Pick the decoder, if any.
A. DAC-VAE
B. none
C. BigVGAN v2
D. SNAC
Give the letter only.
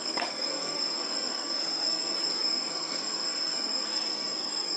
D